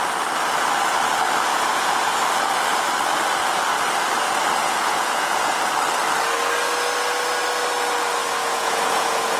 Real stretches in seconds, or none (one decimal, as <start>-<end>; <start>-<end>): 0.0-1.5; 2.1-4.6; 5.6-8.4